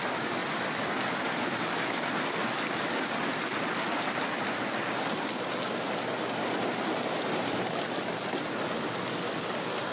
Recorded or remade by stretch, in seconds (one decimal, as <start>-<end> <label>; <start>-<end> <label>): 0.0-0.4 recorded; 0.4-5.1 remade; 5.1-9.9 recorded